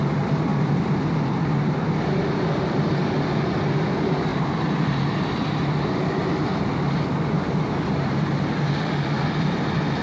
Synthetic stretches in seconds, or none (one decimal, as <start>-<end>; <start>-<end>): none